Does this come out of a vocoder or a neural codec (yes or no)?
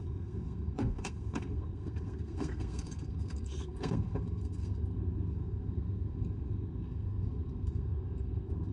yes